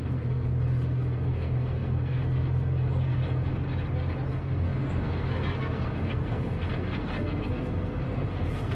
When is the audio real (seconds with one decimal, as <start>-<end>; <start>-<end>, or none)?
3.5-4.3